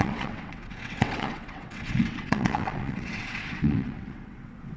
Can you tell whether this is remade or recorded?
remade